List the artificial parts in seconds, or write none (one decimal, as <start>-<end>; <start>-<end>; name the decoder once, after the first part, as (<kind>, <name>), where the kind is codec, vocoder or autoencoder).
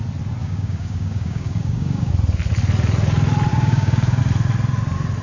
0.4-2.1 (codec, DAC); 3.5-4.2